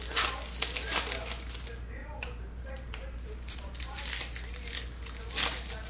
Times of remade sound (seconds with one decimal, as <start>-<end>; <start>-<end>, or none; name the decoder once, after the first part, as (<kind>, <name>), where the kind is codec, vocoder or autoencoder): 2.0-4.0 (vocoder, BigVGAN v2)